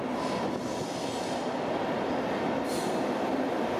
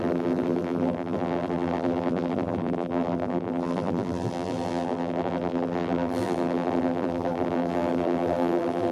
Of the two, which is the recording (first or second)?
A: first